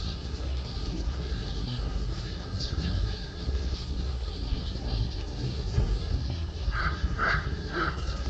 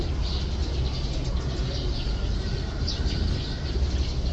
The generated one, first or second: first